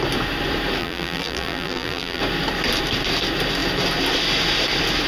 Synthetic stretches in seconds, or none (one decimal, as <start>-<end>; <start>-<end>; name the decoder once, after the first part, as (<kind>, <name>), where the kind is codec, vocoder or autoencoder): 0.8-2.2 (vocoder, BigVGAN v2)